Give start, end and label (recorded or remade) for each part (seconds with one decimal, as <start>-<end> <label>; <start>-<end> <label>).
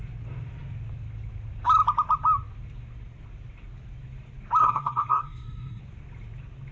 0.0-4.6 recorded; 4.6-5.8 remade; 5.8-6.7 recorded